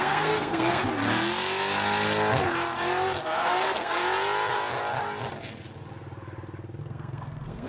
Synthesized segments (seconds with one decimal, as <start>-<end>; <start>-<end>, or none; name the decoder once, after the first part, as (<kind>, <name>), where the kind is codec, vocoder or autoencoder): 0.0-0.8 (codec, SNAC); 3.2-4.0; 6.8-7.7